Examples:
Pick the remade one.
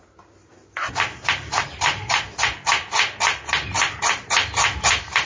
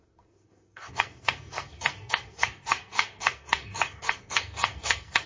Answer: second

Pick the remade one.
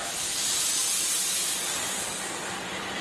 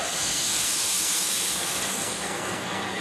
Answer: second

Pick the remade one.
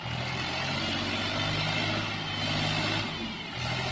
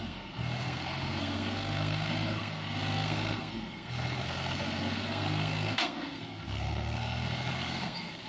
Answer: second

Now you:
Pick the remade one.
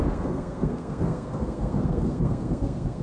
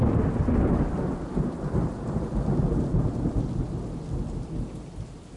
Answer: first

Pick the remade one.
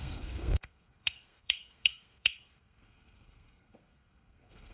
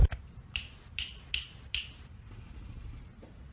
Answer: first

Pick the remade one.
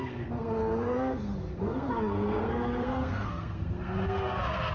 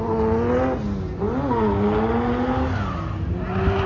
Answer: first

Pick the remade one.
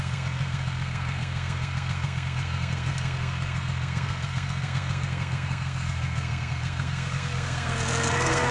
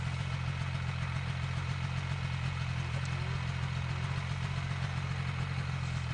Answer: first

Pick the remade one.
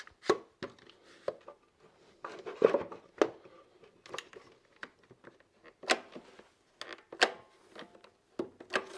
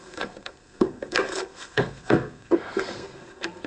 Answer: second